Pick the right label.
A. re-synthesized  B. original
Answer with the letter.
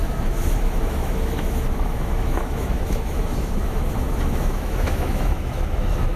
A